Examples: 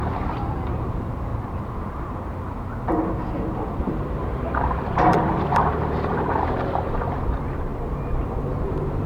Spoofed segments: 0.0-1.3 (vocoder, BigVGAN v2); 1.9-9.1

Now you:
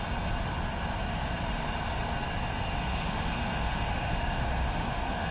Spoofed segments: 2.9-5.3 (autoencoder, DAC-VAE)